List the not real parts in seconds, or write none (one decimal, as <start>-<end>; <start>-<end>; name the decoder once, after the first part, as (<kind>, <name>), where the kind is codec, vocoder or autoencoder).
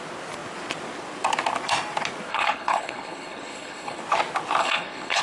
2.3-4.0 (codec, HILCodec); 4.6-5.2